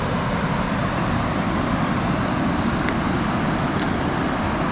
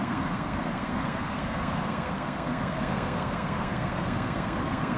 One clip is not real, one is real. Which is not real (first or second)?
second